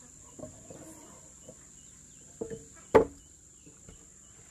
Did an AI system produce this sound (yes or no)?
no